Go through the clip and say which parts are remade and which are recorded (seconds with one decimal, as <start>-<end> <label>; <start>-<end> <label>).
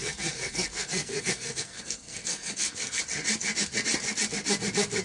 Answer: 0.0-3.0 remade; 3.0-5.0 recorded